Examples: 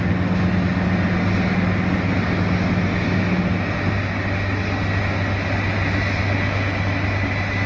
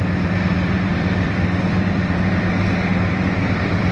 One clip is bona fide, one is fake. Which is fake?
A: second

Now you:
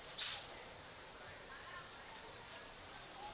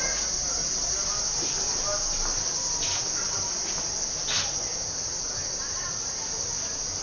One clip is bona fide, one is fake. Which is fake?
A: first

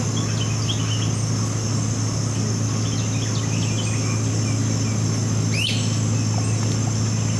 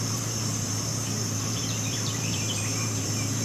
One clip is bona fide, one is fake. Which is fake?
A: second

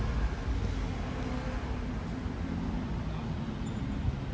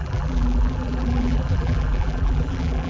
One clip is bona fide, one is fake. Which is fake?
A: second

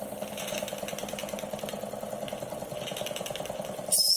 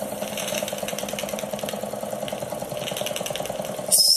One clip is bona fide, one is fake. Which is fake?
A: second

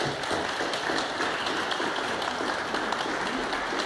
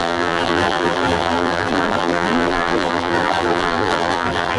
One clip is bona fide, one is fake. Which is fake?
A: second